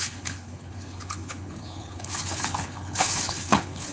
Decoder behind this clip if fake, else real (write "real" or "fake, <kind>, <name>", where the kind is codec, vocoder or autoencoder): fake, codec, HILCodec